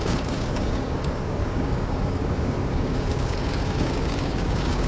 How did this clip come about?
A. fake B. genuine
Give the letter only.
A